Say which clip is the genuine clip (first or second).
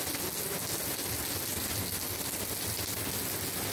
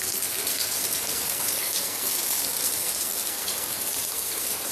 first